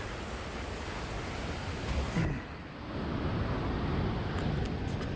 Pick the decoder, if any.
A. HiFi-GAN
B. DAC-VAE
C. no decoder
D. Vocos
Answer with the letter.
C